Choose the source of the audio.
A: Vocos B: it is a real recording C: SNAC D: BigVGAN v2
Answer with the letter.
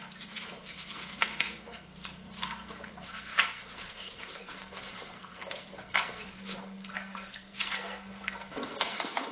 C